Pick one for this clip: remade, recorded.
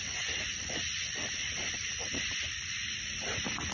remade